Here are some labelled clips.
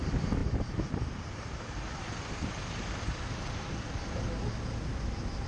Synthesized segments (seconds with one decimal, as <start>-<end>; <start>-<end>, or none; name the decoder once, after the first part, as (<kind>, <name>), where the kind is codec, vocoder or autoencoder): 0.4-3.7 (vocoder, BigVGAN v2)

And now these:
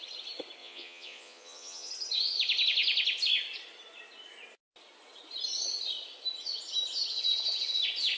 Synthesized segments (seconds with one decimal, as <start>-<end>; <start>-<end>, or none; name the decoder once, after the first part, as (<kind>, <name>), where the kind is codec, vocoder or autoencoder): 0.6-1.9 (vocoder, Vocos)

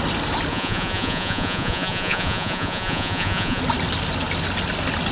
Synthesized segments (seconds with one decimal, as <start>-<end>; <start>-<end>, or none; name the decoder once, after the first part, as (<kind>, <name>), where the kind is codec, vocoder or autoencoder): 0.5-3.6 (vocoder, Vocos)

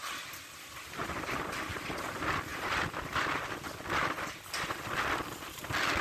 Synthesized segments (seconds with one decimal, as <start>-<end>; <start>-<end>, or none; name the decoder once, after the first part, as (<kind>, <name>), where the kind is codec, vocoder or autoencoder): none

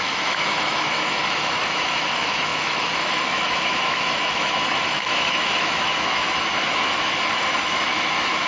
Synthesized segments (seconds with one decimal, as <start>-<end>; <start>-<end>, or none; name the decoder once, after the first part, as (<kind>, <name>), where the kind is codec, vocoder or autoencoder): 0.0-8.5 (autoencoder, DAC-VAE)